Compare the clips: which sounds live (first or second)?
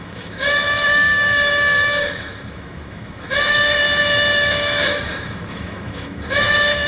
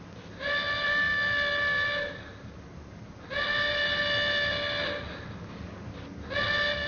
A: second